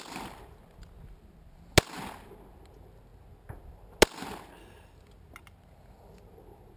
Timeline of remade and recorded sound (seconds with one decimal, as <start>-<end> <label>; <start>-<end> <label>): 0.0-6.8 recorded